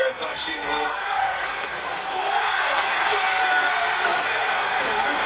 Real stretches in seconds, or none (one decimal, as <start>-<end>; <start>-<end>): none